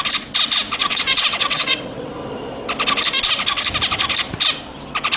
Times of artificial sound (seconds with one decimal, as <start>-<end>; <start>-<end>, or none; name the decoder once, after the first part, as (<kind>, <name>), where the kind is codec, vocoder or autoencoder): 0.8-2.1 (vocoder, WaveNeXt)